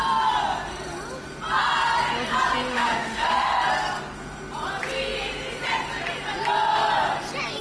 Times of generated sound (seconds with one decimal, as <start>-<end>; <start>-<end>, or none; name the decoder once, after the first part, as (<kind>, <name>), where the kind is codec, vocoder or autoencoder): 2.7-3.6 (autoencoder, DAC-VAE)